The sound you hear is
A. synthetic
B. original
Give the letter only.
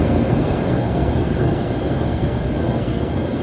A